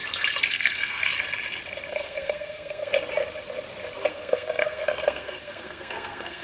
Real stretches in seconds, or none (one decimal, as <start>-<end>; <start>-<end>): 0.0-0.5; 1.1-1.9; 2.9-4.1